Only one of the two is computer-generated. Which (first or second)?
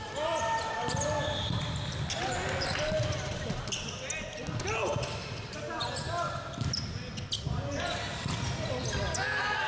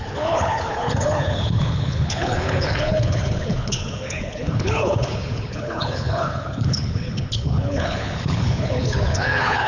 second